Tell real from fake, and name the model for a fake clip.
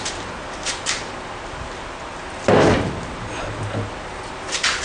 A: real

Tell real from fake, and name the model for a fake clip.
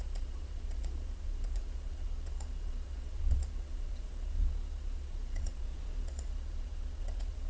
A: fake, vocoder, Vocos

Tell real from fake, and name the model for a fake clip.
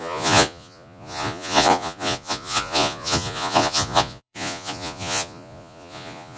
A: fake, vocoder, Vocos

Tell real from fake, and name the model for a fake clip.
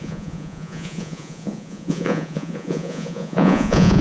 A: fake, vocoder, Vocos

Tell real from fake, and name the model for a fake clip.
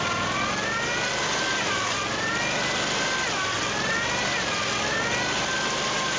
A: real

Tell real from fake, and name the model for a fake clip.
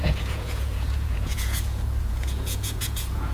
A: fake, vocoder, Vocos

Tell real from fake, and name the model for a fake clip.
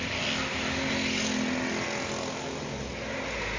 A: real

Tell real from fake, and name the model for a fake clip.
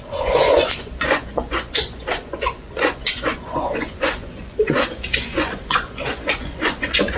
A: fake, vocoder, Vocos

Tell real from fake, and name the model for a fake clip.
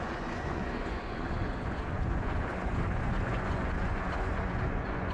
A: fake, vocoder, Vocos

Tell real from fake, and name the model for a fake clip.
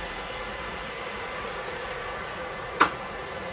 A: fake, vocoder, Vocos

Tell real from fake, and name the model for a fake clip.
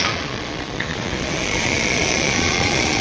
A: fake, vocoder, Vocos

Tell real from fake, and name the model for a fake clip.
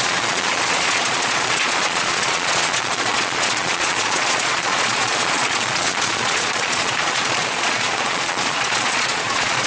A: fake, vocoder, Vocos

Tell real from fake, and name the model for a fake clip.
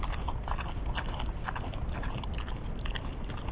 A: real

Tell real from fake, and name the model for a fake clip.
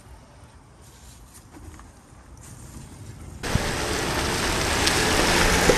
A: real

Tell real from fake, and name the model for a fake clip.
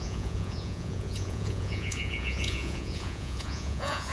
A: fake, vocoder, Vocos